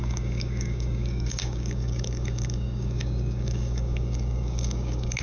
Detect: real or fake fake